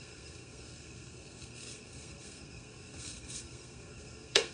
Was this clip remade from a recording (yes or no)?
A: yes